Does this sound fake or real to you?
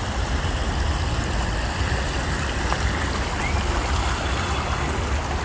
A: real